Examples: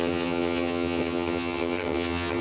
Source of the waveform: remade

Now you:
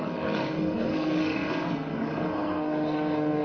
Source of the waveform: remade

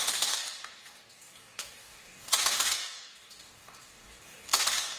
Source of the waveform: remade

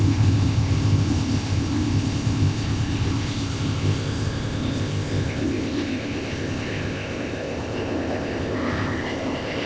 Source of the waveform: remade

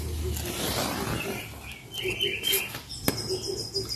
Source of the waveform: recorded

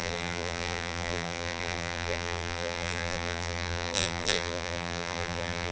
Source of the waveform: remade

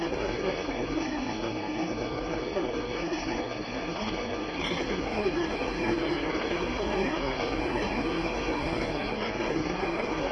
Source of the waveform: remade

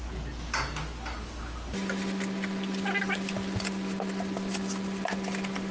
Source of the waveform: recorded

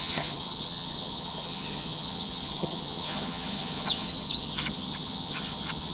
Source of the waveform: remade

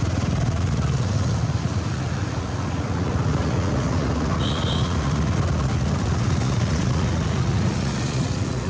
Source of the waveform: remade